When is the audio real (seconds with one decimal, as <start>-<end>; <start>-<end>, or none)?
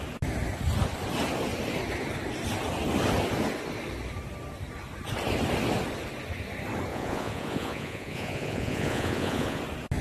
0.0-6.9; 9.6-10.0